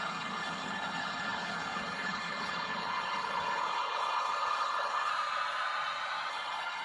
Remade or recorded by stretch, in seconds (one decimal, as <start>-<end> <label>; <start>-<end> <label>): 0.0-5.1 remade; 5.1-6.3 recorded; 6.3-6.8 remade